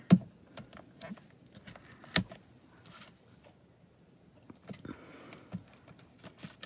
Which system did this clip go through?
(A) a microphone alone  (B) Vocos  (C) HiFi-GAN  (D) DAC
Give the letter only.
A